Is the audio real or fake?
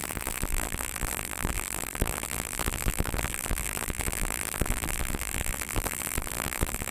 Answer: fake